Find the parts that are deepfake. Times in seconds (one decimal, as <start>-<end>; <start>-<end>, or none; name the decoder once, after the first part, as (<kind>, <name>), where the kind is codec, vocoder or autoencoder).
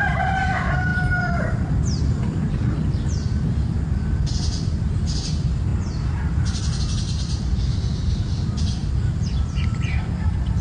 0.0-5.7 (vocoder, BigVGAN v2); 6.8-10.6